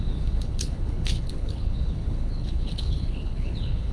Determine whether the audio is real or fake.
fake